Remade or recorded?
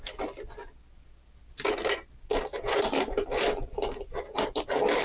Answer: recorded